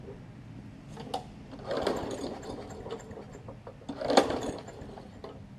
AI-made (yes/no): no